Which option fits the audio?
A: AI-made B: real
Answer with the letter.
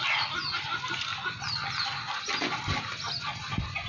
B